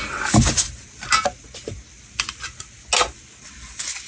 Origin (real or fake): real